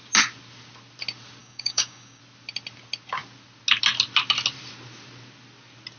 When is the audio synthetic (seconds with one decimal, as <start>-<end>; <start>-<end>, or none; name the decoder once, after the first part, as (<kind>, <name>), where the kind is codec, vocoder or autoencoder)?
1.4-2.2 (codec, DAC)